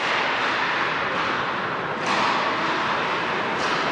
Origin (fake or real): real